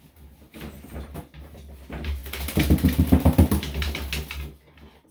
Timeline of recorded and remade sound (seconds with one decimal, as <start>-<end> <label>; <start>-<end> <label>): 0.0-5.1 recorded